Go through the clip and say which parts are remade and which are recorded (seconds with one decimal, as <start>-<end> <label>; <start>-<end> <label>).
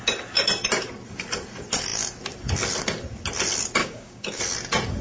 0.0-3.8 recorded; 3.8-4.4 remade; 4.4-5.0 recorded